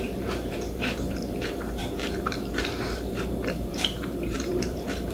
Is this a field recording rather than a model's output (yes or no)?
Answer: no